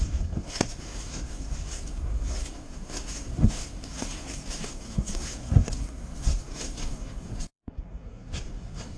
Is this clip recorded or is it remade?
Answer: remade